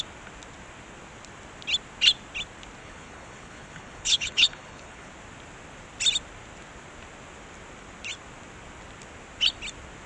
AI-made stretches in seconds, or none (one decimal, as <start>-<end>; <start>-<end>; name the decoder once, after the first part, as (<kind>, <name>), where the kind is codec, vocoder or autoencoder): 2.8-5.1 (codec, HILCodec)